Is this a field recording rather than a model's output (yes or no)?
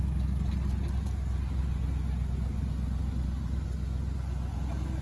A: yes